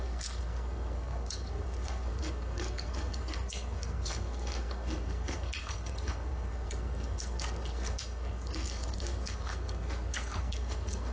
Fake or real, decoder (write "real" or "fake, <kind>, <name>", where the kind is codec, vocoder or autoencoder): fake, codec, SNAC